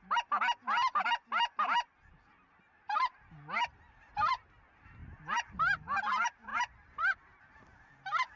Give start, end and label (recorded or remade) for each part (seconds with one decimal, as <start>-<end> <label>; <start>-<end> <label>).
0.0-3.6 recorded; 3.6-4.3 remade; 4.3-6.5 recorded; 6.5-7.4 remade; 7.4-8.4 recorded

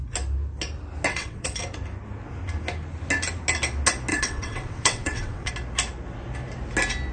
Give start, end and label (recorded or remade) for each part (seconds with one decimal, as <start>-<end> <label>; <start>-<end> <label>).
0.0-1.1 recorded; 1.1-1.6 remade; 1.6-4.1 recorded; 4.1-5.5 remade; 5.5-7.1 recorded

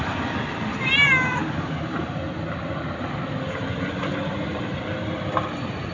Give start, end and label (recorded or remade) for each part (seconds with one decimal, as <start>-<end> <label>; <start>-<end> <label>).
0.0-5.9 recorded

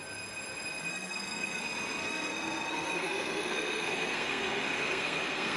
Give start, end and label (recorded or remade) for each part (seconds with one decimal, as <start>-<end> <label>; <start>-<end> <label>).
0.0-0.9 recorded; 0.9-1.6 remade; 1.6-2.0 recorded; 2.0-5.6 remade

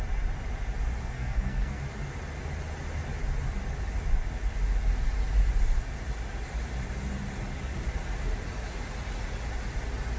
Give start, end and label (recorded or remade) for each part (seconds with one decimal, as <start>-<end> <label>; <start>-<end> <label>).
0.0-1.0 recorded; 1.0-1.8 remade; 1.8-10.2 recorded

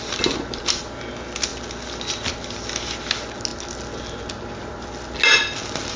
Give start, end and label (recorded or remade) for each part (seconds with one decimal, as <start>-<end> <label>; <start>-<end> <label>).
0.0-6.0 recorded